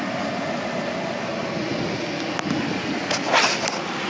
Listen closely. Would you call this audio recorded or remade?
recorded